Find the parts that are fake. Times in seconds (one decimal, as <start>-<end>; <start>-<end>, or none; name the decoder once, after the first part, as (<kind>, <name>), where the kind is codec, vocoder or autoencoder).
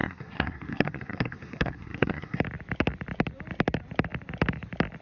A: 0.0-2.4 (codec, SNAC)